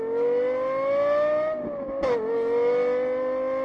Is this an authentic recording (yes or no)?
yes